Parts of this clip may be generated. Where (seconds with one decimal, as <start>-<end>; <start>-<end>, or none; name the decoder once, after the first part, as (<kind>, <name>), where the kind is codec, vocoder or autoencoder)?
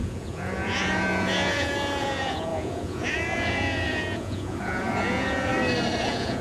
0.0-5.5 (vocoder, Vocos); 6.0-6.4